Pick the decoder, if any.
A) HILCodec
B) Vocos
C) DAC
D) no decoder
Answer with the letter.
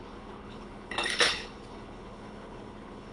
A